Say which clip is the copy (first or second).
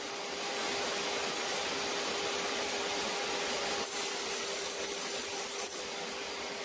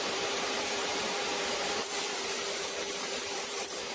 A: second